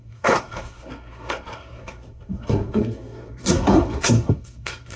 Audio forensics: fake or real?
fake